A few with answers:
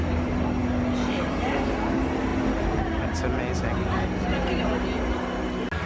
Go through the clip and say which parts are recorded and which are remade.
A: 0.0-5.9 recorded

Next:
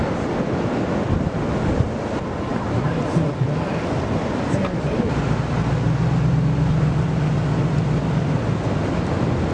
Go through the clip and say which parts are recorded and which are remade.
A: 0.0-2.5 recorded; 2.5-3.3 remade; 3.3-9.5 recorded

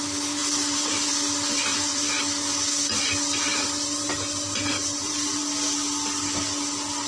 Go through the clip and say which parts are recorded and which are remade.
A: 0.0-0.4 recorded; 0.4-1.1 remade; 1.1-1.7 recorded; 1.7-2.2 remade; 2.2-3.5 recorded; 3.5-5.4 remade; 5.4-7.1 recorded

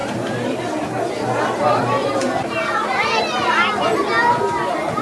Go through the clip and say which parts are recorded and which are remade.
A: 0.0-0.6 remade; 0.6-2.0 recorded; 2.0-3.2 remade; 3.2-5.0 recorded

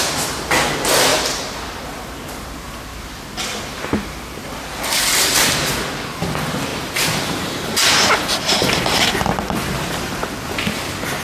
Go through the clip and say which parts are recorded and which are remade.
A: 0.0-1.1 remade; 1.1-4.0 recorded; 4.0-6.7 remade; 6.7-8.2 recorded; 8.2-11.2 remade